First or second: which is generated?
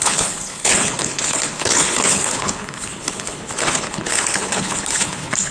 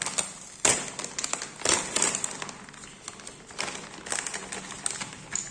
first